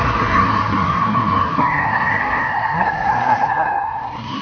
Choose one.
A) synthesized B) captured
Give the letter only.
A